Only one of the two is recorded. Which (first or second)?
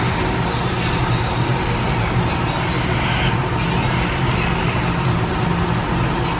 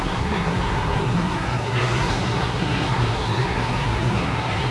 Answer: first